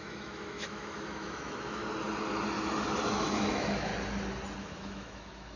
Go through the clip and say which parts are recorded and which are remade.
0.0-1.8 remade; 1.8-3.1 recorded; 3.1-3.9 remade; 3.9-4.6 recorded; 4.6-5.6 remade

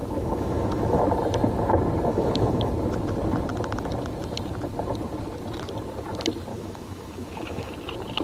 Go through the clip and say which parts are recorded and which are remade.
0.0-1.0 remade; 1.0-2.1 recorded; 2.1-2.7 remade; 2.7-6.5 recorded; 6.5-7.7 remade; 7.7-8.2 recorded

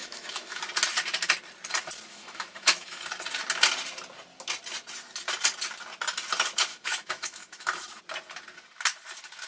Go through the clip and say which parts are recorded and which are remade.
0.0-0.6 remade; 0.6-2.1 recorded; 2.1-3.0 remade; 3.0-6.7 recorded; 6.7-8.0 remade; 8.0-9.5 recorded

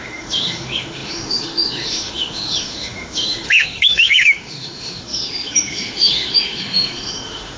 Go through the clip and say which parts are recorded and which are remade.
0.0-7.6 remade

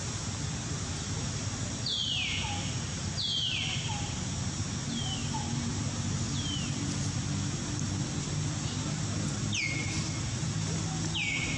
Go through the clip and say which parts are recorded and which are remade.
0.0-11.6 recorded

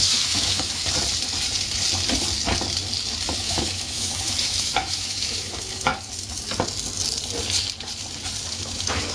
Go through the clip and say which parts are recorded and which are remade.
0.0-0.8 remade; 0.8-3.4 recorded; 3.4-5.9 remade; 5.9-8.5 recorded; 8.5-9.1 remade